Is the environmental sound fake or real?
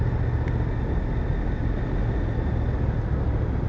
real